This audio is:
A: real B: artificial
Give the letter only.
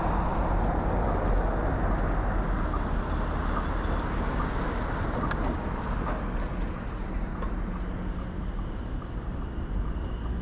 A